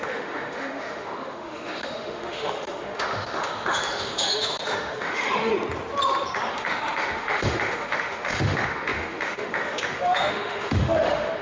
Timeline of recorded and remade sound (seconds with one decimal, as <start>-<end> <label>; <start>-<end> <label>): 0.0-5.5 remade; 5.5-6.5 recorded; 6.5-11.4 remade